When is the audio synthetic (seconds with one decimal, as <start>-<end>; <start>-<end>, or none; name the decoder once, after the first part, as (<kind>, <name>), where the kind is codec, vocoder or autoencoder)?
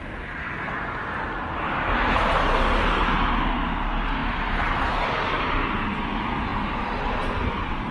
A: none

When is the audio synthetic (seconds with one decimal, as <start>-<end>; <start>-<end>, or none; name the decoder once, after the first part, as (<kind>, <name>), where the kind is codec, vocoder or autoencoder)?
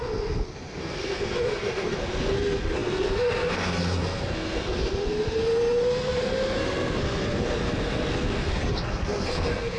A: 0.0-9.8 (codec, SNAC)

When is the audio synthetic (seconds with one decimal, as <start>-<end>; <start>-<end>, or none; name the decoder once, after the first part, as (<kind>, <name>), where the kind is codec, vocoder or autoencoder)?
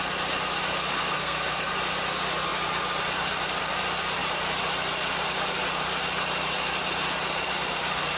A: 0.9-1.7 (codec, SNAC)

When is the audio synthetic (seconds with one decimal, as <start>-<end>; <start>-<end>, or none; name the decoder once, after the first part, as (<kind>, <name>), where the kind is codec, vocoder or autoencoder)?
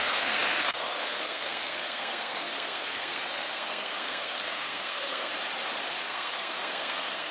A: 0.0-5.3 (codec, SNAC); 6.0-7.3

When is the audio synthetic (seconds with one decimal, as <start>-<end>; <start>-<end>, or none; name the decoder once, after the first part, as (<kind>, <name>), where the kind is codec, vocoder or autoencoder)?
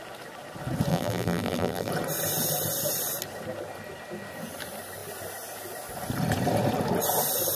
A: 0.9-1.9 (vocoder, BigVGAN v2)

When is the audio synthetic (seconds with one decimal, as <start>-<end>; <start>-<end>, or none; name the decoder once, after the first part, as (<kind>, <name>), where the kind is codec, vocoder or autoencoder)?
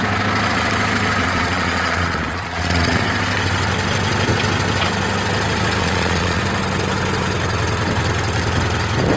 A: 1.2-3.0 (vocoder, Vocos); 5.8-6.4